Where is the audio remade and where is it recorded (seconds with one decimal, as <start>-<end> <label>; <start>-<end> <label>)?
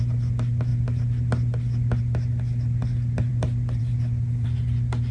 0.0-5.1 recorded